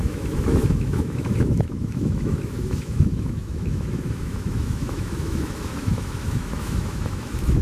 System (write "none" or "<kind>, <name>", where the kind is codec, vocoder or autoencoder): autoencoder, DAC-VAE